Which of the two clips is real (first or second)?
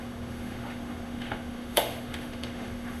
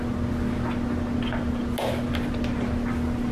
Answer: second